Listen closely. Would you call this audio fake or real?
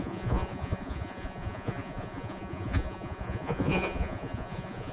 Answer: fake